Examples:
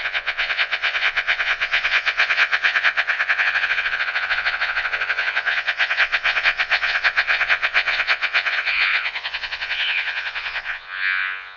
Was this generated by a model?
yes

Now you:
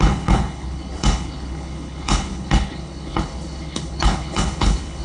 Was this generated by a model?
yes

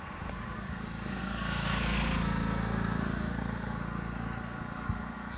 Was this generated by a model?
yes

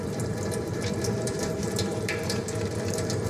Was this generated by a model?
yes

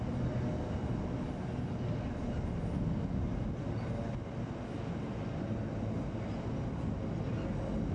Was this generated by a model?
no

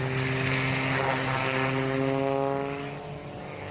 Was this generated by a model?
no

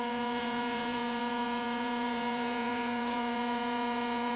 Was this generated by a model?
yes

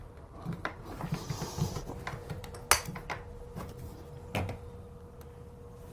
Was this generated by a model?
no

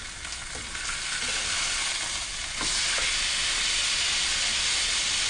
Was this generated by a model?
no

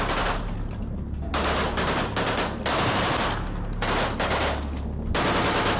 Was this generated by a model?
no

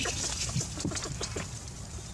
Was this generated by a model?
no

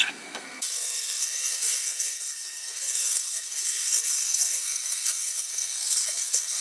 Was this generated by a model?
yes